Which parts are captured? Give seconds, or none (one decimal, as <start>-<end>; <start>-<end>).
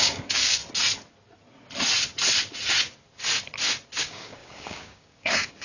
0.6-4.0